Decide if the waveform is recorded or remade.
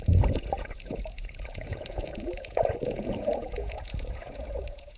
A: remade